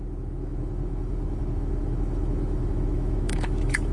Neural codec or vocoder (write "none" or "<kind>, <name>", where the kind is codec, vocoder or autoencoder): autoencoder, DAC-VAE